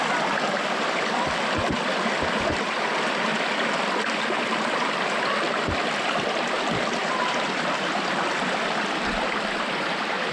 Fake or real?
fake